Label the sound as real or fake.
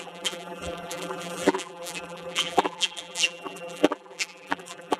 fake